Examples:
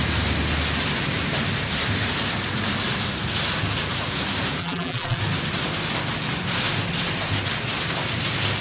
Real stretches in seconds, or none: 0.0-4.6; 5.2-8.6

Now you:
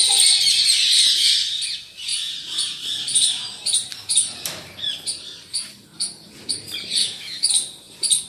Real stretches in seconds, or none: 0.0-7.0; 7.5-8.3

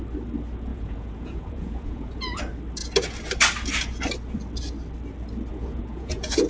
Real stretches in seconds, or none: 0.0-0.7; 2.4-5.5

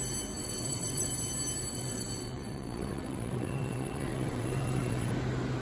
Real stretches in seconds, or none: 0.0-0.4; 1.1-1.7; 5.1-5.6

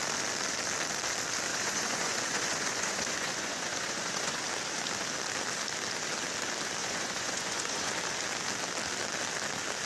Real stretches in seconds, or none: 0.0-1.5; 4.4-6.8; 7.9-9.9

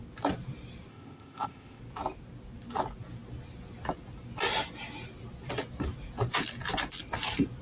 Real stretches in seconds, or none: 0.0-0.9; 1.8-7.6

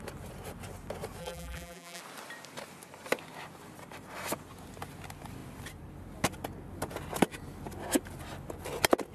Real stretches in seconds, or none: 0.0-1.2; 2.0-9.1